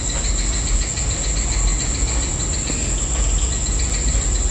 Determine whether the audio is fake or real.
real